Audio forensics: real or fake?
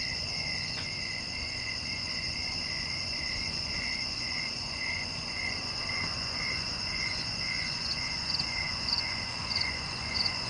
fake